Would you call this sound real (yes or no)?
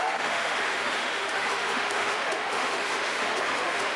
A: no